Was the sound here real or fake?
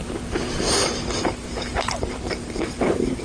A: fake